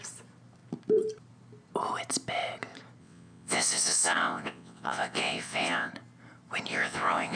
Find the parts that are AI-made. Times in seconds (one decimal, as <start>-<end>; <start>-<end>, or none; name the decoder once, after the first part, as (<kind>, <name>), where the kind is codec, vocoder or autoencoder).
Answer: 3.0-5.9 (vocoder, WaveNeXt); 6.7-7.4